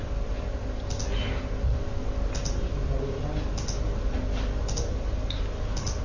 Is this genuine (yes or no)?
yes